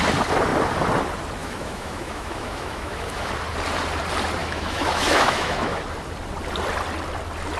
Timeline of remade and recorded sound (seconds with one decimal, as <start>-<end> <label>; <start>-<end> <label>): 0.0-1.4 recorded; 1.4-3.3 remade; 3.3-4.4 recorded; 4.4-5.8 remade; 5.8-7.6 recorded